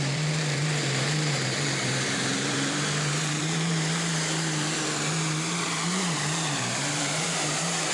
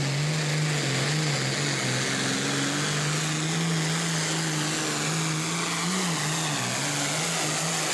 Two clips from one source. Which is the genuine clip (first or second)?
second